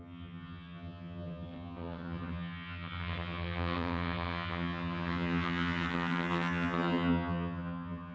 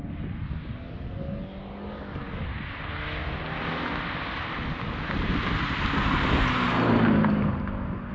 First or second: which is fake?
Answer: first